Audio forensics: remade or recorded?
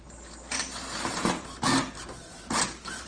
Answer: remade